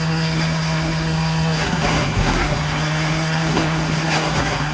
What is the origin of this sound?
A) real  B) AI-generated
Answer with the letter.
B